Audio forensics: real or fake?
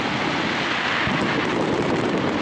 real